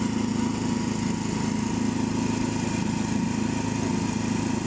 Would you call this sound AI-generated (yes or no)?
no